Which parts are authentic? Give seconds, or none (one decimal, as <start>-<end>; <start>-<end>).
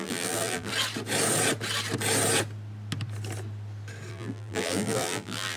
0.7-4.1